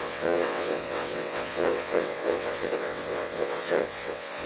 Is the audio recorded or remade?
remade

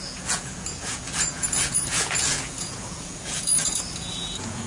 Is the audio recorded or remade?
remade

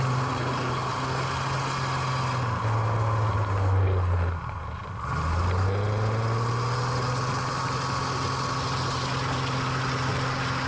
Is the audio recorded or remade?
recorded